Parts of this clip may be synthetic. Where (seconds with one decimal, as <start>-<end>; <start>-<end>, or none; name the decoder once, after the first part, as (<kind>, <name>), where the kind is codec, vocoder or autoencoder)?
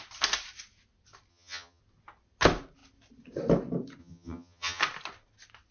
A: 1.3-1.8 (vocoder, HiFi-GAN); 4.0-4.8